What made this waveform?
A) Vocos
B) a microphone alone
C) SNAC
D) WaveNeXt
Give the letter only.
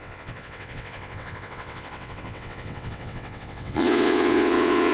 D